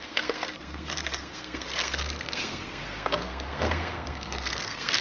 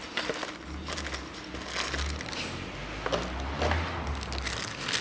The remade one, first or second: first